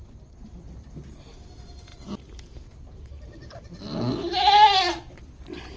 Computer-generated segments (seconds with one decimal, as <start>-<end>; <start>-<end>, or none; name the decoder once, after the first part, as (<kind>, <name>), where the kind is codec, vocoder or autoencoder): 1.9-3.8 (vocoder, BigVGAN v2)